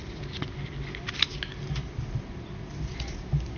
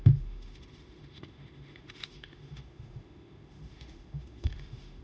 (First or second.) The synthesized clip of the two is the second